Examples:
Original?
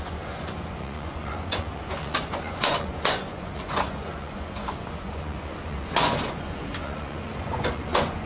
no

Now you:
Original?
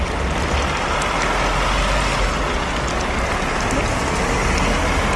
yes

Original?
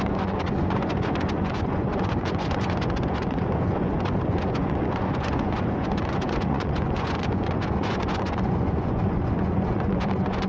no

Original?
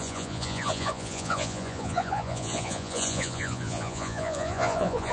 no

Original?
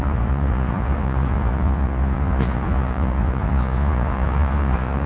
no